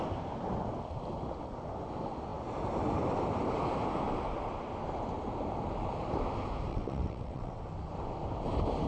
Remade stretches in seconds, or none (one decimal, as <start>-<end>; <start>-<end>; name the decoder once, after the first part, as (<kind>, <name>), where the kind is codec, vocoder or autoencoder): 6.7-7.6 (vocoder, WaveNeXt)

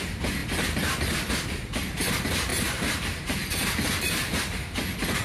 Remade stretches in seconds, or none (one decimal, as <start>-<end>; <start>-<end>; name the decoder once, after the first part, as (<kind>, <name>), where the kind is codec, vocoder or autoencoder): 2.5-4.4 (vocoder, BigVGAN v2)

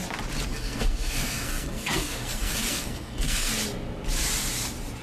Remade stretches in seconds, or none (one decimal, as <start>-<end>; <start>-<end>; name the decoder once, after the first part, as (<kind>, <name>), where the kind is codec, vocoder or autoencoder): 0.5-3.5 (codec, SNAC)

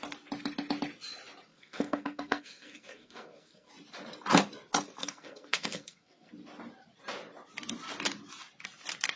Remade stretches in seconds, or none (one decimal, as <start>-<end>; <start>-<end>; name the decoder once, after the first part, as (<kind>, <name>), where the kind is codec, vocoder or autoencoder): 1.5-3.7 (codec, SNAC); 5.0-6.3

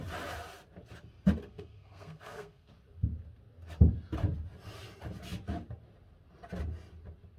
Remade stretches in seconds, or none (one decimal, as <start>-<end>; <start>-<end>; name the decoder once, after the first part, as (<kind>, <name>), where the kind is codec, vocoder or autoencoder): 1.4-2.7 (codec, SNAC)